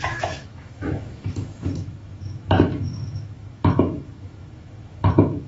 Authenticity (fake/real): fake